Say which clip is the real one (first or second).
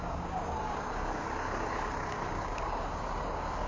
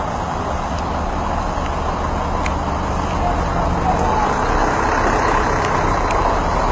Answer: second